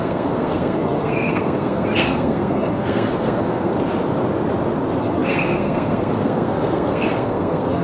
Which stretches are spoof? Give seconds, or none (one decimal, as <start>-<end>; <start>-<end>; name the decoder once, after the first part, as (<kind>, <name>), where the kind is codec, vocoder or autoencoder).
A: 0.0-3.7 (codec, SNAC); 5.0-7.8